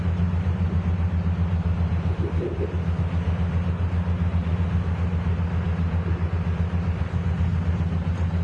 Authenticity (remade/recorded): recorded